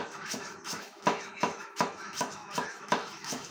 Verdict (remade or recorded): remade